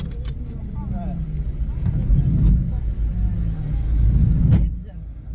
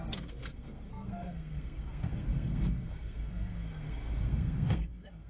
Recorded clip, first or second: first